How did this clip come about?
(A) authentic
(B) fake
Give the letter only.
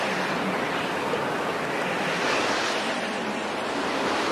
A